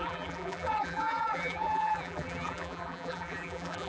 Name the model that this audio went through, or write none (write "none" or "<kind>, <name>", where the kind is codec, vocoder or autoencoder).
vocoder, BigVGAN v2